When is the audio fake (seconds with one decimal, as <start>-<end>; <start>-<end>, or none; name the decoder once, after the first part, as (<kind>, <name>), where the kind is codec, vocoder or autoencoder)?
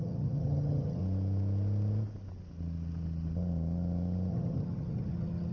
0.0-1.0 (vocoder, HiFi-GAN); 4.3-5.5